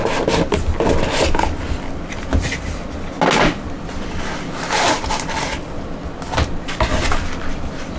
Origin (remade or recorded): recorded